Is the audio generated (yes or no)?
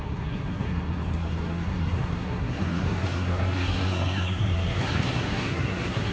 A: yes